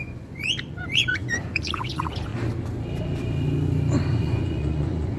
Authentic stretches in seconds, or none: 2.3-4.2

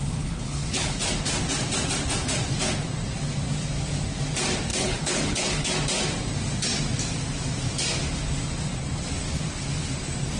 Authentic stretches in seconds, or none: 1.0-4.7; 5.7-10.4

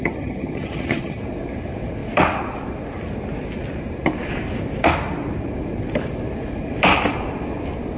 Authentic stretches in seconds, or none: 1.2-8.0

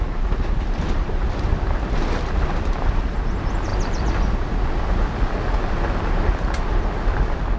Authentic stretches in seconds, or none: 0.0-7.6

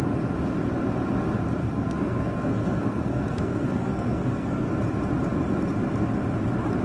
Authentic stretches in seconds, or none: 0.0-1.6; 4.7-6.8

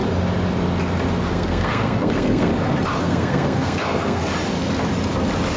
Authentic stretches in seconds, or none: 0.0-1.3; 2.5-3.0; 4.2-5.6

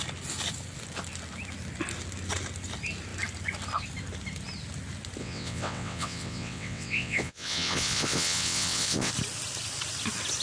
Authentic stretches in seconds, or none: 0.0-5.2; 9.1-10.4